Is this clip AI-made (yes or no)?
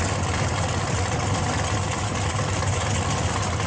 no